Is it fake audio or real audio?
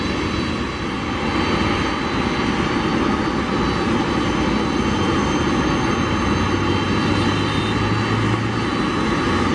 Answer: real